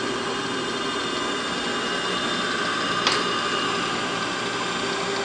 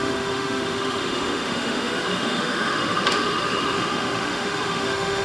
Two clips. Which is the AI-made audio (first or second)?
second